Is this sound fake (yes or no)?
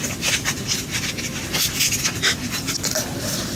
no